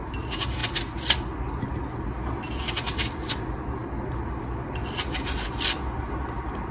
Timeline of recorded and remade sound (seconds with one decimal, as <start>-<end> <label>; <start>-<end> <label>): 0.0-6.7 recorded